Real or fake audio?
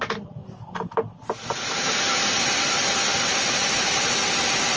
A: real